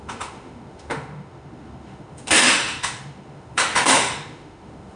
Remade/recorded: remade